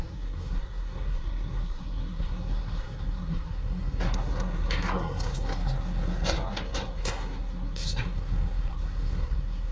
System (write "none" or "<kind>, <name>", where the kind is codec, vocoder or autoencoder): codec, SNAC